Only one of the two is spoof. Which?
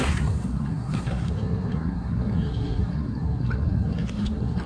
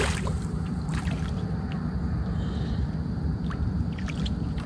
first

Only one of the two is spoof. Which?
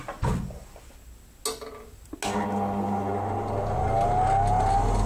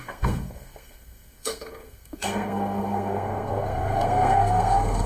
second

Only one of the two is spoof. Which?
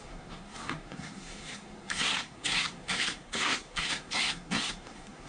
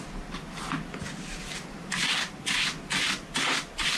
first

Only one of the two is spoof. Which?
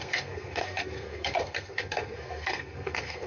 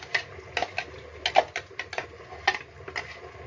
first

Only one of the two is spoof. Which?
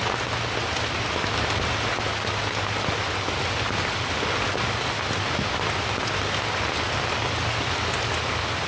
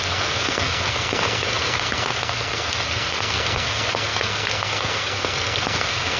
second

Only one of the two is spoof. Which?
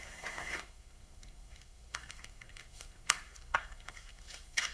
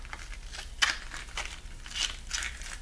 first